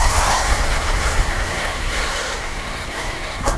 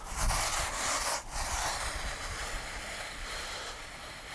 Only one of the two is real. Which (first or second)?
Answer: second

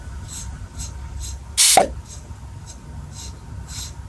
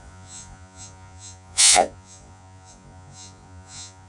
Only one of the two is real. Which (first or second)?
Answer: first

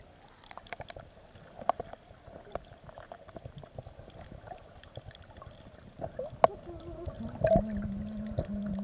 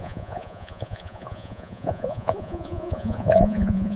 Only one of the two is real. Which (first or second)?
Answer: first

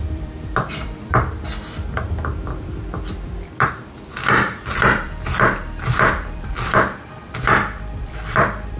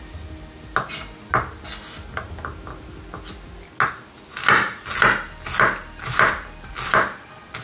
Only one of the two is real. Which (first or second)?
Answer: second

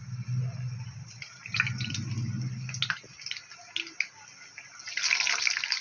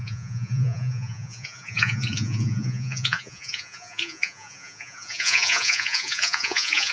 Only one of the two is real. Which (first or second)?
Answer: first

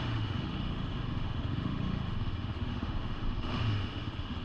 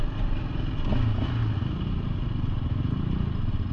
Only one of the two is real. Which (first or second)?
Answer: second